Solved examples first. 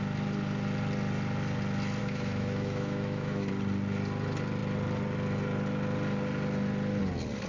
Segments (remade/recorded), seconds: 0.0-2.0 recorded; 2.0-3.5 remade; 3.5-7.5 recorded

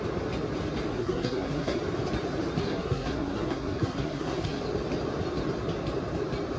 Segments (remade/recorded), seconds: 0.0-0.9 recorded; 0.9-1.8 remade; 1.8-2.6 recorded; 2.6-4.6 remade; 4.6-6.6 recorded

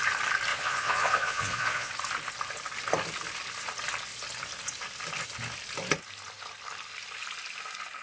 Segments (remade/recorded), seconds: 0.0-0.5 recorded; 0.5-1.9 remade; 1.9-8.0 recorded

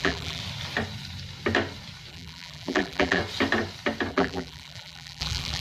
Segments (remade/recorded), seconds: 0.0-0.4 remade; 0.4-2.1 recorded; 2.1-3.2 remade; 3.2-4.1 recorded; 4.1-5.6 remade